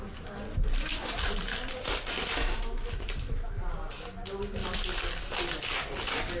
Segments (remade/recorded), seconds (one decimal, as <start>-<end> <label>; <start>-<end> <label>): 0.0-0.9 recorded; 0.9-1.9 remade; 1.9-4.6 recorded; 4.6-5.8 remade; 5.8-6.4 recorded